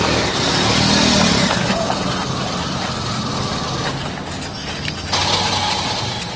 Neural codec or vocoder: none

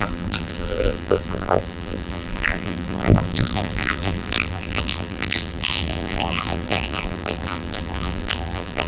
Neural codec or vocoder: vocoder, BigVGAN v2